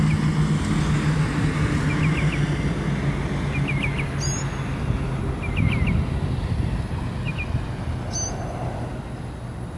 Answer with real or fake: real